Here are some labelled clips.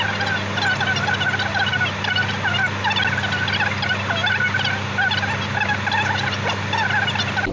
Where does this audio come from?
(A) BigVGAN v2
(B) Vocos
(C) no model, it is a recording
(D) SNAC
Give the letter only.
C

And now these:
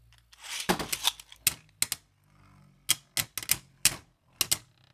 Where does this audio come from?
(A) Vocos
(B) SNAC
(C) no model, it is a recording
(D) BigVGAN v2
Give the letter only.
C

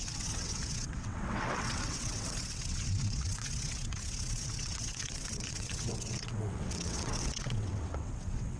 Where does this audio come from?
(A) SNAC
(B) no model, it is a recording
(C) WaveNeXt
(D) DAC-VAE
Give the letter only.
C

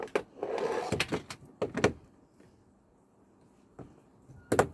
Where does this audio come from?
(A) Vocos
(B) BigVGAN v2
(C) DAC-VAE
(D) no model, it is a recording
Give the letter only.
D